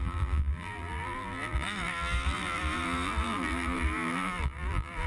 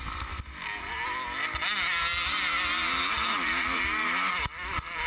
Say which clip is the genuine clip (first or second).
second